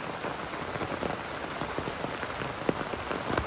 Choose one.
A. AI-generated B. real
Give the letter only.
B